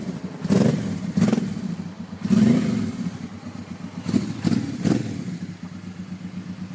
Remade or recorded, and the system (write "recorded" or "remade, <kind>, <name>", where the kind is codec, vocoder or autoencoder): recorded